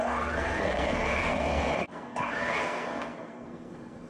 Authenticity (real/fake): fake